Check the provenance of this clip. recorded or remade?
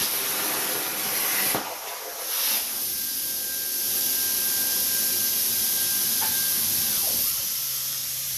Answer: recorded